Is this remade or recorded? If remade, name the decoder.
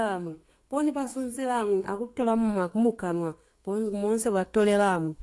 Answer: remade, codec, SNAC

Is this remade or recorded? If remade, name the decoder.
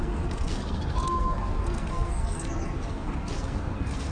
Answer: remade, codec, SNAC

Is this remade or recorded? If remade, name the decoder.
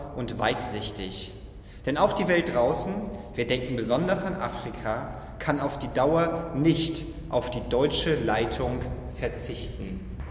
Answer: recorded